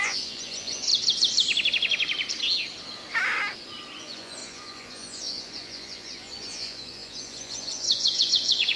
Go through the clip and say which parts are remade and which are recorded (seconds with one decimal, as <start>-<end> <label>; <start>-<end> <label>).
0.0-0.9 remade; 0.9-4.0 recorded; 4.0-8.8 remade